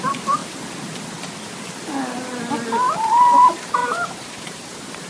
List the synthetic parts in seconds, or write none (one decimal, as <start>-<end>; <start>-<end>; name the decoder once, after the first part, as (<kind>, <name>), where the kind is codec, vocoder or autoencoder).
3.8-5.1 (vocoder, BigVGAN v2)